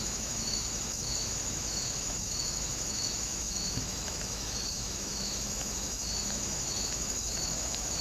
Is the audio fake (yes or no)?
yes